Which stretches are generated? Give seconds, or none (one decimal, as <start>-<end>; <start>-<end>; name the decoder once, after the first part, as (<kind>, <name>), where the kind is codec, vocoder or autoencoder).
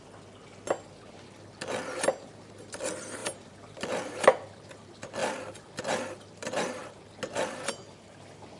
3.2-4.7 (vocoder, BigVGAN v2); 5.2-5.8